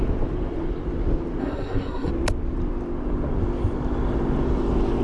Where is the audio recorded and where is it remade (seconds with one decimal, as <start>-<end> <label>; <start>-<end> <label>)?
0.0-1.4 recorded; 1.4-2.1 remade; 2.1-5.0 recorded